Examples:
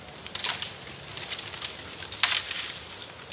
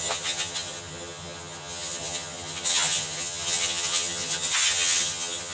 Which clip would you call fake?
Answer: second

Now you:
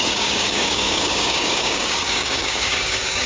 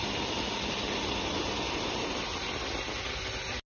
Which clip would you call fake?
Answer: first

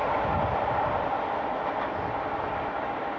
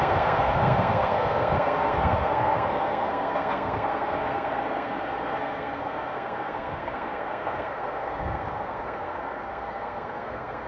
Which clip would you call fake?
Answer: second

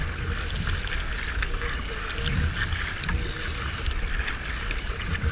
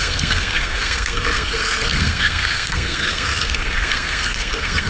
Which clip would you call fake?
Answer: second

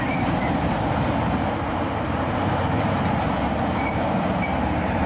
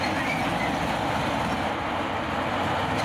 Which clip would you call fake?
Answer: first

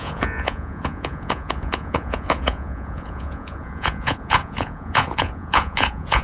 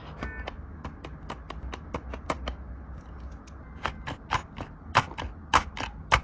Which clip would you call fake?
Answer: first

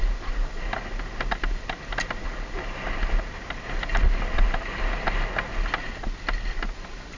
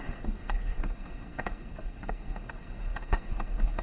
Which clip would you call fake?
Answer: second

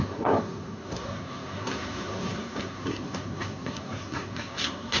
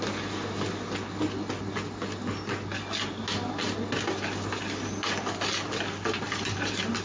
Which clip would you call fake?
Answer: first